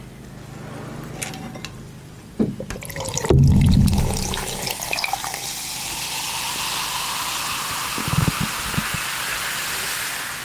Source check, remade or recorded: recorded